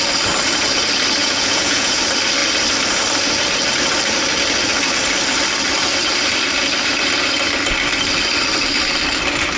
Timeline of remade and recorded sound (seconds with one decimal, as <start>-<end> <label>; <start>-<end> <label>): 0.0-1.2 recorded; 1.2-2.0 remade; 2.0-9.6 recorded